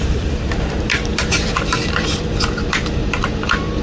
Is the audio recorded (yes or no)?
no